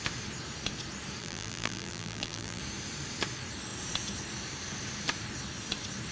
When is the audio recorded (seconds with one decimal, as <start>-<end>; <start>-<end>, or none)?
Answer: 0.0-1.2; 2.6-6.1